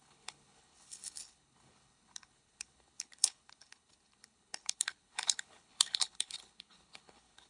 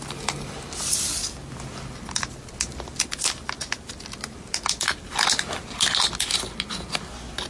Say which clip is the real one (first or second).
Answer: second